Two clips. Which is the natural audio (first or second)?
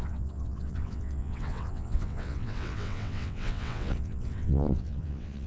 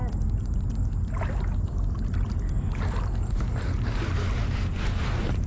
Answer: second